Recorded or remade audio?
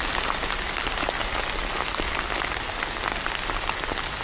recorded